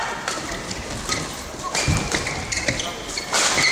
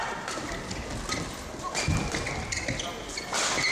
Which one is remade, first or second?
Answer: first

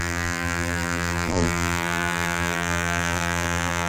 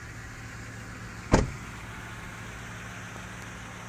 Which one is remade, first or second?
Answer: first